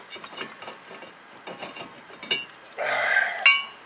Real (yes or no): yes